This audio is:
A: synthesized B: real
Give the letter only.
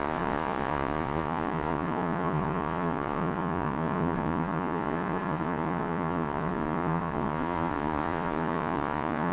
A